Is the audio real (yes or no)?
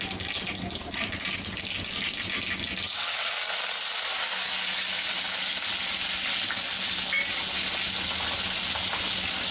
yes